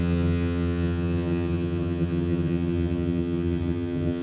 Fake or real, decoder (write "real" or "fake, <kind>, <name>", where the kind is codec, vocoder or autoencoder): fake, vocoder, HiFi-GAN